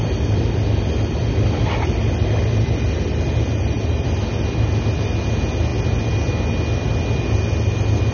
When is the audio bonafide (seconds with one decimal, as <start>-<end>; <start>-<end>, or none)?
0.0-8.1